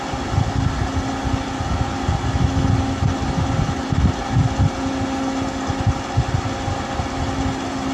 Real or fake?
real